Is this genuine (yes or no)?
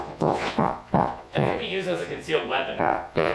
no